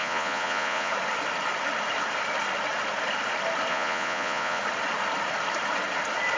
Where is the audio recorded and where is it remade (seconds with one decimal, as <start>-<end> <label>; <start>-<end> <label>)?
0.0-0.9 remade; 0.9-3.7 recorded; 3.7-4.6 remade; 4.6-6.4 recorded